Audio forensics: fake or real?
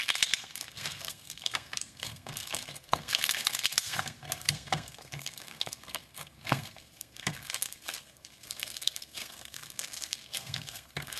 fake